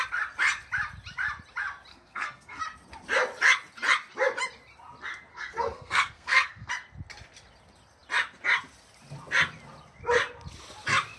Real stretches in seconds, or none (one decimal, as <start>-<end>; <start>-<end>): 0.0-1.9; 2.6-5.3; 6.7-11.2

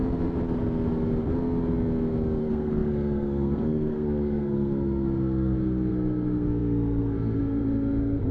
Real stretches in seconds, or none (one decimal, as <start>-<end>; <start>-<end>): 0.0-2.4

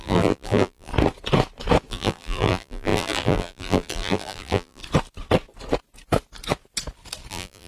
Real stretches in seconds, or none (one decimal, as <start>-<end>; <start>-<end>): 0.9-1.9; 4.8-7.3

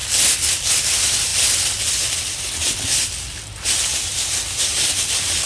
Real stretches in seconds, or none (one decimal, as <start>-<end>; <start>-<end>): 0.0-5.5

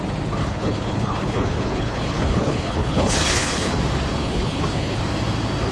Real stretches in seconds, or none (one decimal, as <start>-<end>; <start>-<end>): 0.0-0.4; 3.8-4.2; 5.0-5.7

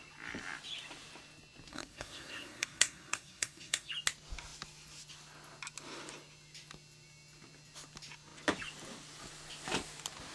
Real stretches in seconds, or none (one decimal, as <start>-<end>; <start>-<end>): 0.0-1.7; 3.9-10.3